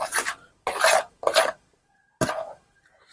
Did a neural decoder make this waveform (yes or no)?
no